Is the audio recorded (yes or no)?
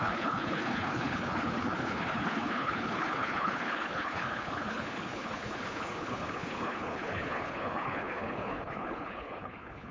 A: no